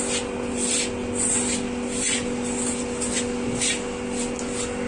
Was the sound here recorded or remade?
recorded